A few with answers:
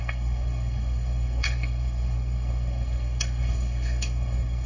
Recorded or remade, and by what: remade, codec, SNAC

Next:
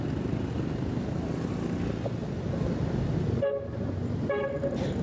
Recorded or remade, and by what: recorded